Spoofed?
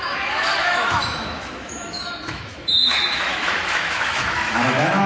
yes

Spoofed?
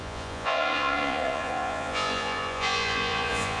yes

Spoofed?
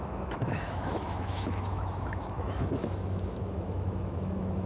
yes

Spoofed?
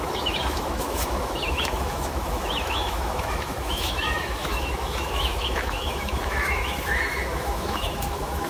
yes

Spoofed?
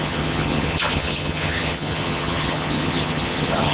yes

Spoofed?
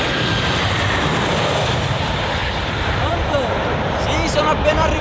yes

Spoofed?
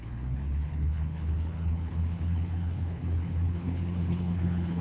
yes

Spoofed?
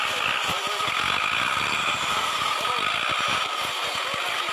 no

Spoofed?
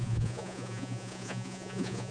yes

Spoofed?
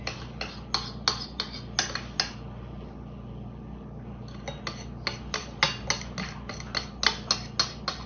no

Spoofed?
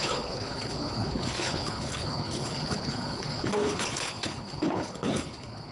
yes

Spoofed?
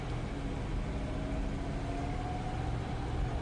no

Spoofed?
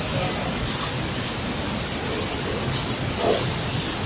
no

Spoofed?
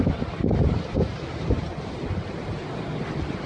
no